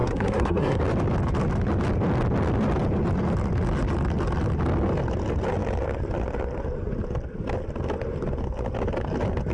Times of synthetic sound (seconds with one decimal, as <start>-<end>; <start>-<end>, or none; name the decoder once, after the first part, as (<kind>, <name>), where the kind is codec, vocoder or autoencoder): 0.0-0.8 (codec, SNAC)